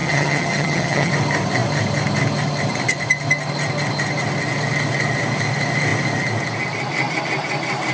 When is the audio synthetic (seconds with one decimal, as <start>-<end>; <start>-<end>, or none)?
0.0-1.1